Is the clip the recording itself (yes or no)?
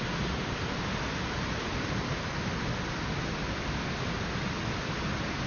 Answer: yes